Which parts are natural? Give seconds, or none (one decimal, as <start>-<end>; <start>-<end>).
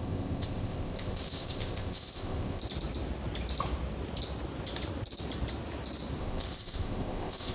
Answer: 2.6-6.2